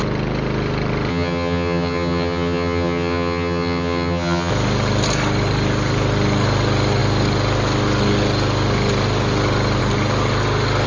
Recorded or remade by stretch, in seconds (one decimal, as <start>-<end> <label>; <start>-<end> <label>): 0.0-1.1 recorded; 1.1-4.5 remade; 4.5-10.9 recorded